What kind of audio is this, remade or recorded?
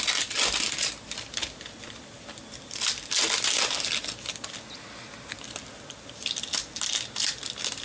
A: recorded